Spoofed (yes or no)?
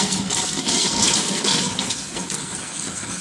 yes